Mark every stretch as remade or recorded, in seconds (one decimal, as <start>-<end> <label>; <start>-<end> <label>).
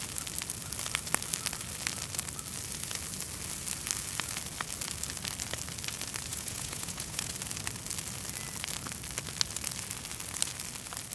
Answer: 0.0-6.3 recorded; 6.3-7.3 remade; 7.3-11.1 recorded